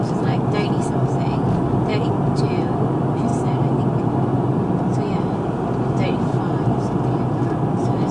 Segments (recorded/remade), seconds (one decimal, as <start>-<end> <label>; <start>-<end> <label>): 0.0-8.1 recorded